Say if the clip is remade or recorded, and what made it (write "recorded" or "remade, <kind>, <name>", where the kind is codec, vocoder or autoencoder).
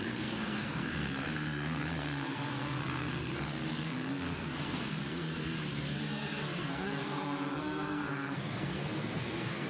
remade, codec, SNAC